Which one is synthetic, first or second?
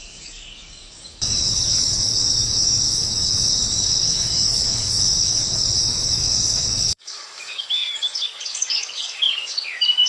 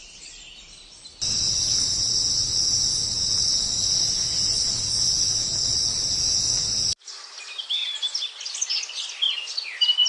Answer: first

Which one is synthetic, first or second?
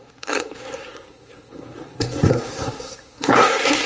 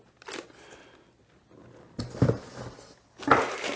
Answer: first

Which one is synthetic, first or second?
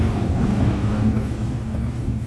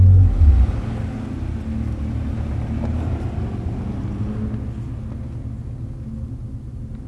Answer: first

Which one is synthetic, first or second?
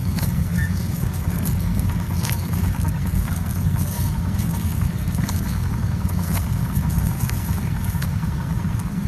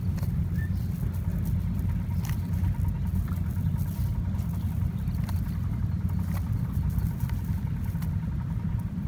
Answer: first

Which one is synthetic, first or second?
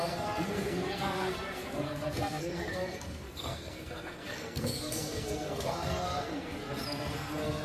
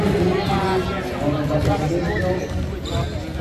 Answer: first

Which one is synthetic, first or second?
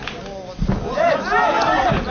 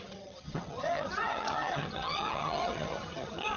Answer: second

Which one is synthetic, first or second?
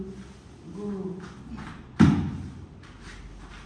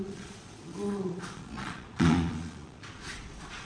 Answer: second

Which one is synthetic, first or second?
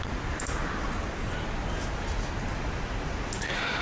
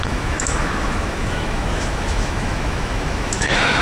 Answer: second